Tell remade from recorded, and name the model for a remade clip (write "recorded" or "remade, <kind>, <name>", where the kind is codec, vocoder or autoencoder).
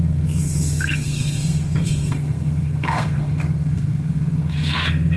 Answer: remade, codec, SNAC